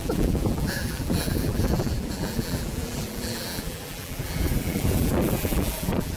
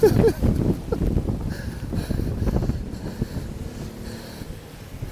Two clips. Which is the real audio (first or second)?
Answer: second